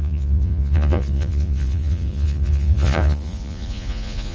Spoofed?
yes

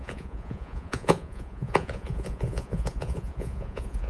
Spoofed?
yes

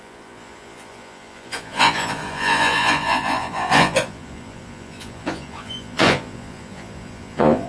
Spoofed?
yes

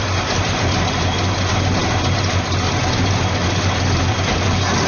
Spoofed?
no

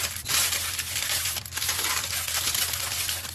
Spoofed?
no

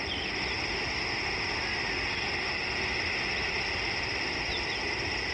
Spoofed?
no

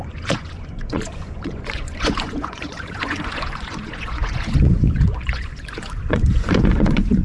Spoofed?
yes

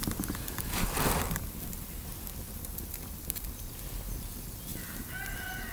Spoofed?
no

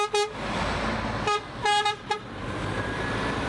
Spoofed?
no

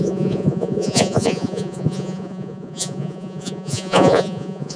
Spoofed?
yes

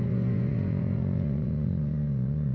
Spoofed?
yes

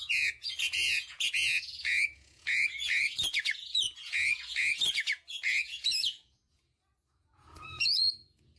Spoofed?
yes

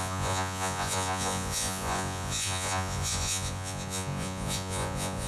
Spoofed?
yes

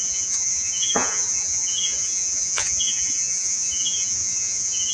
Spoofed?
yes